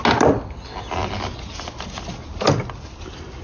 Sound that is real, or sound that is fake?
real